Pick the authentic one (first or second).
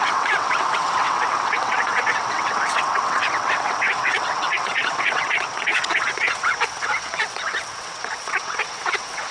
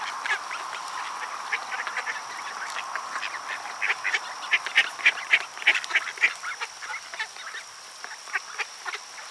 second